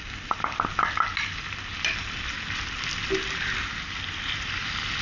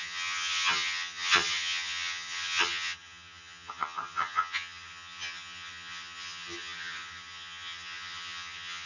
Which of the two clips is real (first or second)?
first